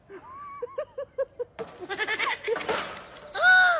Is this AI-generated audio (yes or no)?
no